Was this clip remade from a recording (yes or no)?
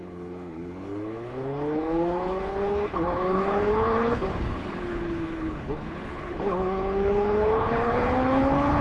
yes